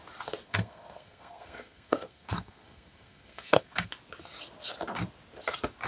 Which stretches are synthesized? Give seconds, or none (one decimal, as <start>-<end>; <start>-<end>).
0.4-3.9

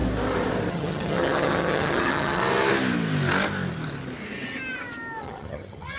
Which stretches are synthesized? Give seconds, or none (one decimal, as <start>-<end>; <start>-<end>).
0.7-2.4; 5.2-6.0

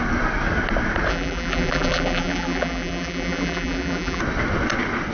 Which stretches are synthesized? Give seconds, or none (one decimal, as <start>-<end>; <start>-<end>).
1.1-4.2

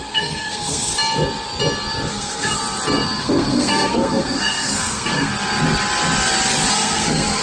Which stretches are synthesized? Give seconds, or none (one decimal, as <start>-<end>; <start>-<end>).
0.0-0.9; 2.1-2.6; 3.2-5.3; 6.7-7.4

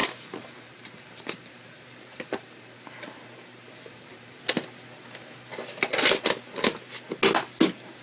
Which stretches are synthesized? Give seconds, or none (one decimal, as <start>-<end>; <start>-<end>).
0.0-4.4

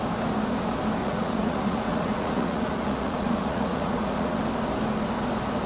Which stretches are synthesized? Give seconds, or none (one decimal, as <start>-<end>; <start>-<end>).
1.0-4.4

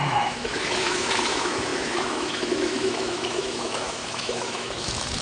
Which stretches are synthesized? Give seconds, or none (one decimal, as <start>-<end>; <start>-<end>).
0.0-5.2

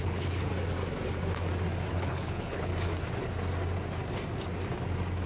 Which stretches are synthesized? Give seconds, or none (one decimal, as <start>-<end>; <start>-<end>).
0.0-0.5; 1.9-2.7